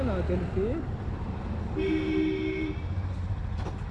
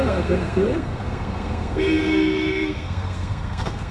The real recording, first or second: first